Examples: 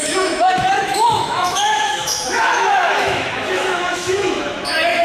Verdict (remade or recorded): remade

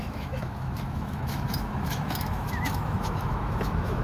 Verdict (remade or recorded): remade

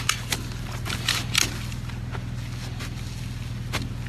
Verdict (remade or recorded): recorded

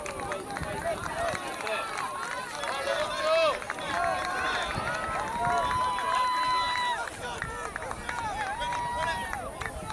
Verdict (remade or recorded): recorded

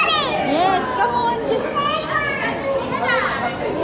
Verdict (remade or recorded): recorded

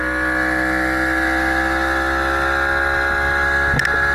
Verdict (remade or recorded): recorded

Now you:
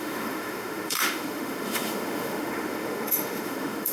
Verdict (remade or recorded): remade